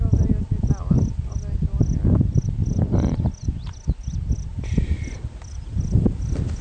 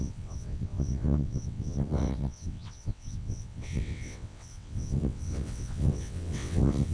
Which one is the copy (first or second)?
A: second